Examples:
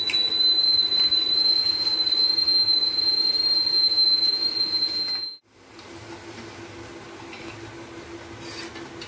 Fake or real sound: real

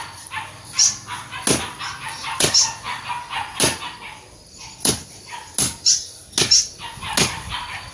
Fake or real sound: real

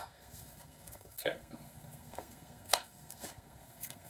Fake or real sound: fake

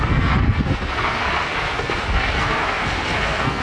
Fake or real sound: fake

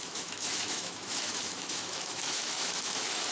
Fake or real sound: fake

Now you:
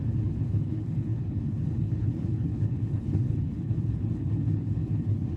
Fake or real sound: fake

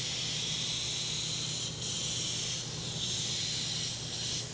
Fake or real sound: real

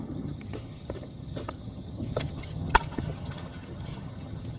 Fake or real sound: fake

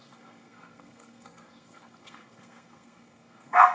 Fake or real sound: fake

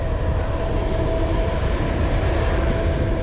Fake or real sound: real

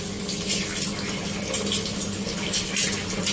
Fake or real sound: real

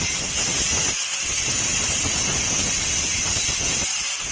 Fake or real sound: real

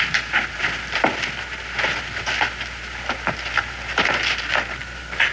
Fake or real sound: real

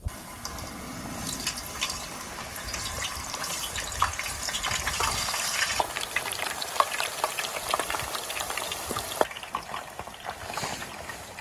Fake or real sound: fake